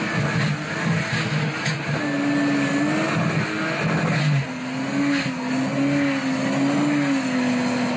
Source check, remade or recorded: recorded